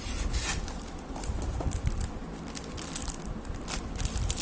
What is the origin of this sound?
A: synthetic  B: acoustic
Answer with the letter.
B